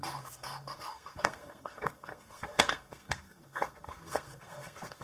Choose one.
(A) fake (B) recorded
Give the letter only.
A